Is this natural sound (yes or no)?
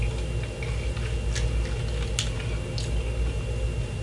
yes